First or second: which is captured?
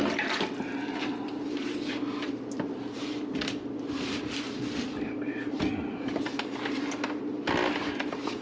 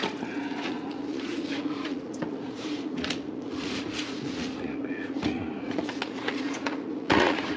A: first